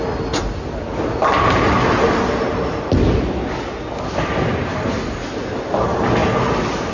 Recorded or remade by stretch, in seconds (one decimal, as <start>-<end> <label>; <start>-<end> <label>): 0.0-6.9 recorded